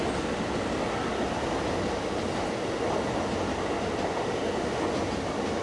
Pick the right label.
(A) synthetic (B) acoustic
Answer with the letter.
B